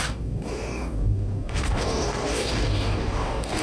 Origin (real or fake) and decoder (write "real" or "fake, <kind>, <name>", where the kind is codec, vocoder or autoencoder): fake, codec, DAC